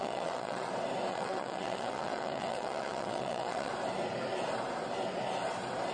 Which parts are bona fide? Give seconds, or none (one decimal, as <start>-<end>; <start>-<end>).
0.7-1.1; 3.7-5.9